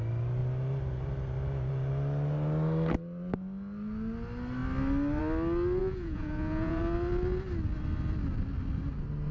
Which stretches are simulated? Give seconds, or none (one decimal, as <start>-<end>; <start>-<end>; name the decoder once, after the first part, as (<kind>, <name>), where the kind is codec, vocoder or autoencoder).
5.8-6.8 (vocoder, Vocos)